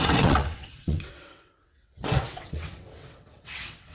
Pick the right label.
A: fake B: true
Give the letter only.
A